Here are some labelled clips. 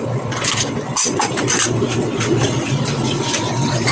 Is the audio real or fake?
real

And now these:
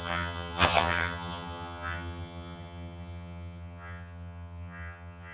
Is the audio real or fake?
fake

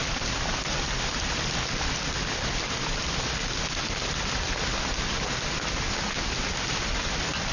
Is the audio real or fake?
real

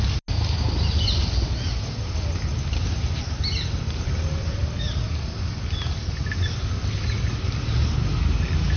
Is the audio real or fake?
real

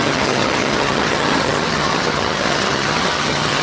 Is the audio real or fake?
fake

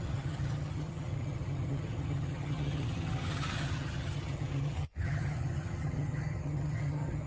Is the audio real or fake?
fake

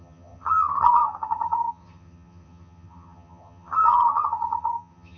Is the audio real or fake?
fake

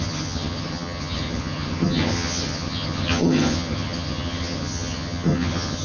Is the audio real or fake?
fake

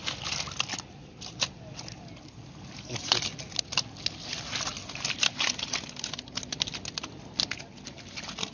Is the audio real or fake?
real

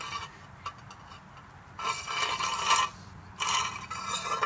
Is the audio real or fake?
real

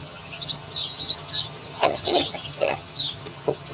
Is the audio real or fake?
fake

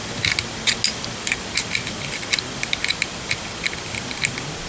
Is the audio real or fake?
real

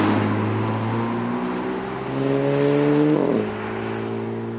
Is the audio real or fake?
real